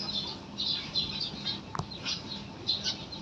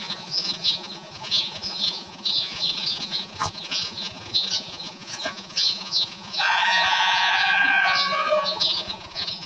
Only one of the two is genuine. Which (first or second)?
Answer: first